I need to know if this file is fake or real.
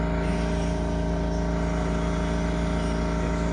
real